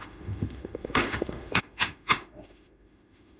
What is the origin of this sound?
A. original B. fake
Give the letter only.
B